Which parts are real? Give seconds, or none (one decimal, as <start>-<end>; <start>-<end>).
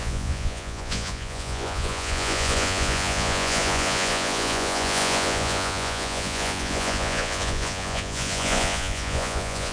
none